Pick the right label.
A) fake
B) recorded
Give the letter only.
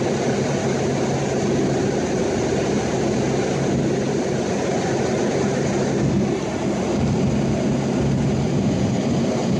B